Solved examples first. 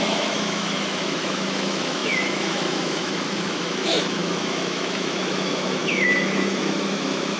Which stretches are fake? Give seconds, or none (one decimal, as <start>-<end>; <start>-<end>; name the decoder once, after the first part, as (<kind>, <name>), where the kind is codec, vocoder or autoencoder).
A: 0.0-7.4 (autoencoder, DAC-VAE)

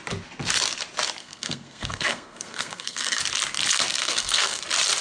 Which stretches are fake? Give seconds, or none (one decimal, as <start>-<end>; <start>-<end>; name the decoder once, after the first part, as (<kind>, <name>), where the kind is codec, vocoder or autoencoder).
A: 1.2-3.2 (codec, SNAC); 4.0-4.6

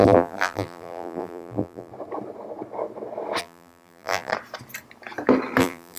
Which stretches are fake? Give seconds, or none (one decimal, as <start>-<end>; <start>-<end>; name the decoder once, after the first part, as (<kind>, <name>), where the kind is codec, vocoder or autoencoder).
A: 0.0-1.9 (vocoder, BigVGAN v2); 3.4-4.3; 5.6-6.0

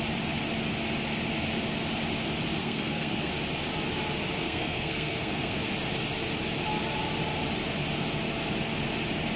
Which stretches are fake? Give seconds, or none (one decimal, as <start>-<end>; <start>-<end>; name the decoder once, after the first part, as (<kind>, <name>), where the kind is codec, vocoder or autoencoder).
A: 2.6-3.3 (codec, SNAC); 4.4-5.7